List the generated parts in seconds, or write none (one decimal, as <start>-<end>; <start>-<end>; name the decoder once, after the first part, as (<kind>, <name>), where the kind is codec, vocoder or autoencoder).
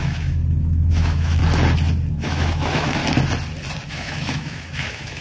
0.0-0.4 (autoencoder, DAC-VAE); 0.9-1.4; 2.1-3.0; 3.9-5.2